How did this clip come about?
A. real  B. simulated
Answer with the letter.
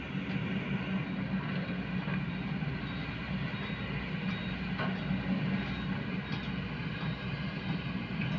A